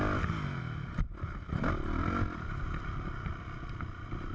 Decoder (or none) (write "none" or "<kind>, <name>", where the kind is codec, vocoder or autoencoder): none